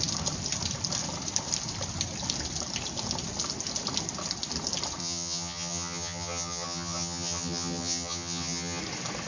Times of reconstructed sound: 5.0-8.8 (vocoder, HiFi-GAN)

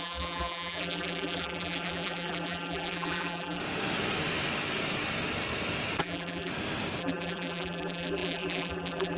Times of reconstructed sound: 0.0-3.6 (vocoder, BigVGAN v2); 6.0-6.5; 7.0-9.2

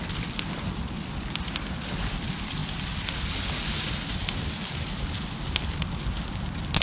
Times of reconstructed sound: none

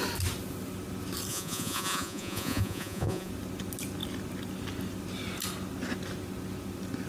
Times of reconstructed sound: 1.3-3.3 (vocoder, Vocos)